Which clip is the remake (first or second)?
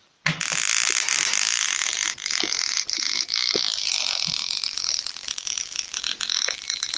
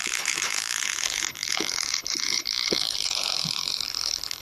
second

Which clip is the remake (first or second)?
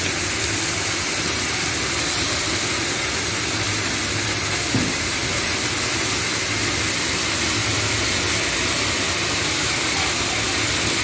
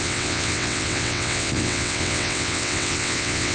second